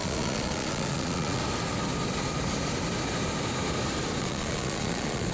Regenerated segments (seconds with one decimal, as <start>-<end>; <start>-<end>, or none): 0.0-1.4; 4.2-5.3